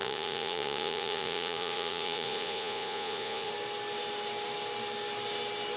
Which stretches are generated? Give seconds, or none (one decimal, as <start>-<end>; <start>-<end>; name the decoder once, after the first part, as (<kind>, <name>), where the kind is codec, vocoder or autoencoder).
0.0-3.5 (vocoder, Vocos)